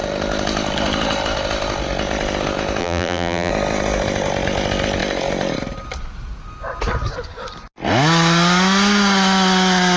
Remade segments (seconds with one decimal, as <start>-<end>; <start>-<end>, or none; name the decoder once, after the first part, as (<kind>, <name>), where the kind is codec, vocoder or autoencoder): 2.8-3.5 (vocoder, BigVGAN v2)